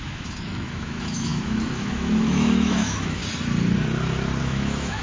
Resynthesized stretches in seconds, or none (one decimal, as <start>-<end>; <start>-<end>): 0.0-3.2; 4.4-5.0